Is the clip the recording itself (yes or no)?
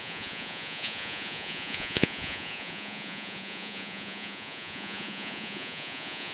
no